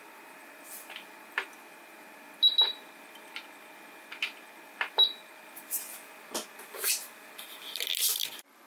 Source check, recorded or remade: recorded